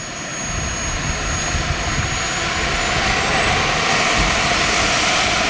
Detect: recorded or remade recorded